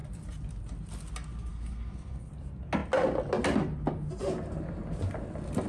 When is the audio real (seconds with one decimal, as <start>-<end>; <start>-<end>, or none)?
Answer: 0.0-1.5; 2.3-5.7